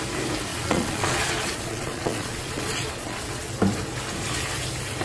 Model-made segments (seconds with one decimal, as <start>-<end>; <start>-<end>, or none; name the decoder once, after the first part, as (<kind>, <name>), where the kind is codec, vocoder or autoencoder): 0.5-3.5 (vocoder, Vocos)